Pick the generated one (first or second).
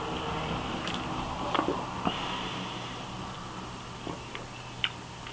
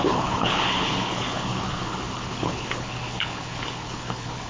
second